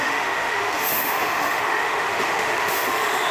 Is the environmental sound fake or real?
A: fake